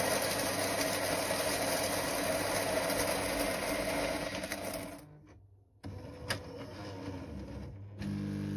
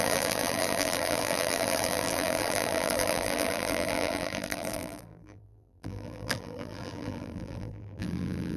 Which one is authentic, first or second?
first